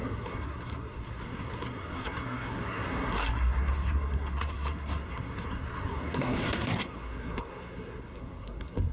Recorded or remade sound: remade